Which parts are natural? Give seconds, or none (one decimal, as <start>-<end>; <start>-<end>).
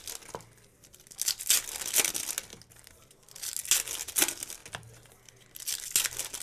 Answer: 0.0-6.4